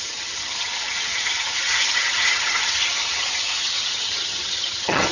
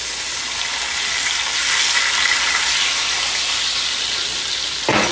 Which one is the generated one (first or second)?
first